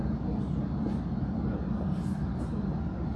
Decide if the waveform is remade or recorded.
recorded